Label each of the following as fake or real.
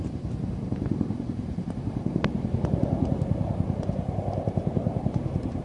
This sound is fake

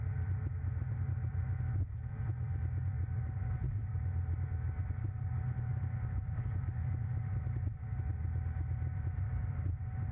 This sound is fake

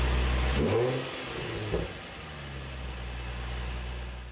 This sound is real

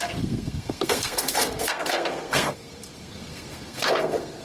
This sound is fake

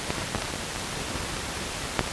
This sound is fake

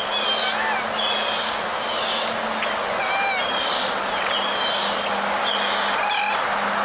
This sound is real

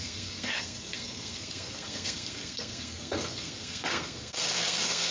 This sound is fake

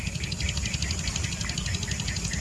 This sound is real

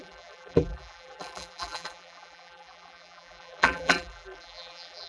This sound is fake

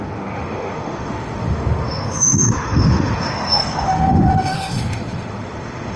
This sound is fake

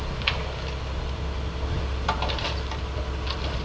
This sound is real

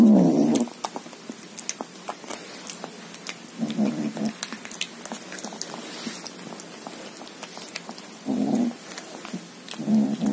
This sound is real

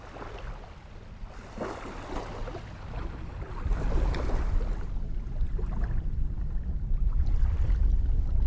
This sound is real